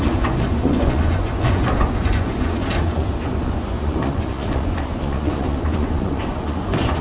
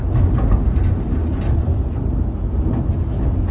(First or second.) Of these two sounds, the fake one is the first